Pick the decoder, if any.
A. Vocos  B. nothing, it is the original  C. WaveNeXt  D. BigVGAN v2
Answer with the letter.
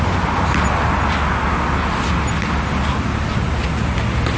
B